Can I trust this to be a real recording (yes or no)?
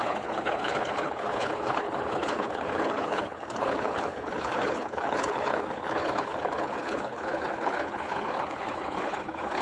no